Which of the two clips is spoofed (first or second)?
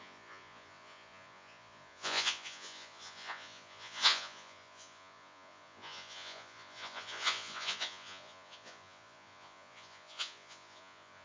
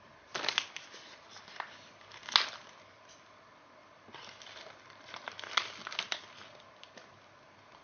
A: first